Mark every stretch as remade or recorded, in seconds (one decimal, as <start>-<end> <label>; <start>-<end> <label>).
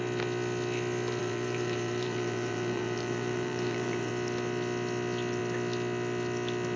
0.0-1.2 recorded; 1.2-4.1 remade; 4.1-6.8 recorded